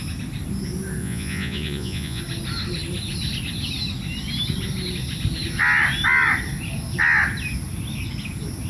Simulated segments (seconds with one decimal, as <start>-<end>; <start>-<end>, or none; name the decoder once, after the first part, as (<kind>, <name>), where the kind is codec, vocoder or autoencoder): 1.0-2.2 (vocoder, Vocos)